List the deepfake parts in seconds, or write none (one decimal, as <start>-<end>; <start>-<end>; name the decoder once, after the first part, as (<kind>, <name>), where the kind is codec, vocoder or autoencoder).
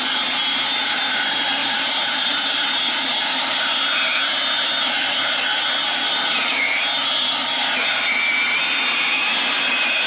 1.6-3.6 (vocoder, BigVGAN v2)